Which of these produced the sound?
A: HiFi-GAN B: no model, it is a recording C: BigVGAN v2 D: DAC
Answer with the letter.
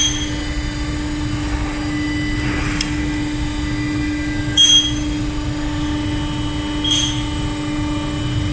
B